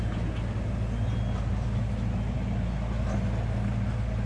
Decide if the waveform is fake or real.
real